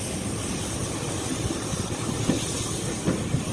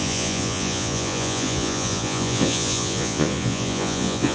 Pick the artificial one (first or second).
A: second